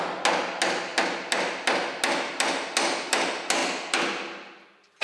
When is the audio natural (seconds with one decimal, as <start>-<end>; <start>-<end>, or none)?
0.0-5.0